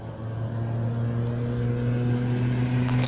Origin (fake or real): real